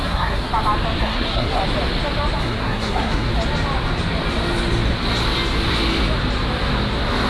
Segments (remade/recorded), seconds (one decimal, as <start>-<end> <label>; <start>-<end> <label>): 0.0-0.5 remade; 0.5-1.0 recorded; 1.0-1.6 remade; 1.6-2.4 recorded; 2.4-3.3 remade; 3.3-7.3 recorded